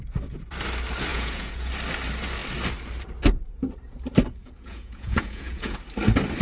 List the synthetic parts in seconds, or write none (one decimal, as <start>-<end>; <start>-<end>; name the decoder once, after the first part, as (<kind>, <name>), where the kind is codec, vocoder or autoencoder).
1.1-1.7 (vocoder, Vocos); 4.4-5.8